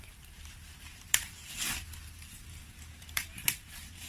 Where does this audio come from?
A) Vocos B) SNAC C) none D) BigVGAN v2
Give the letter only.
D